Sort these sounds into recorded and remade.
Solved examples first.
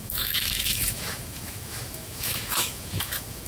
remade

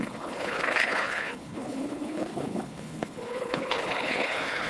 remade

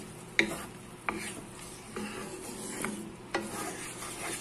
recorded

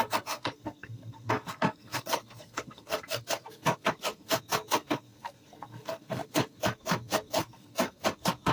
remade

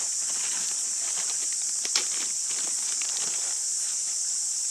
recorded